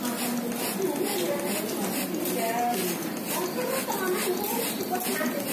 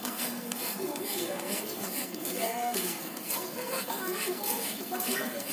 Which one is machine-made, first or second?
second